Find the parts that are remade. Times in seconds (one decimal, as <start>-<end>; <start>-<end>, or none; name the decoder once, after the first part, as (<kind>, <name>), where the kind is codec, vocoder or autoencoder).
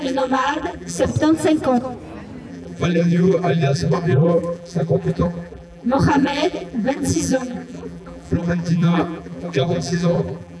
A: 0.0-1.1 (vocoder, BigVGAN v2); 2.5-10.6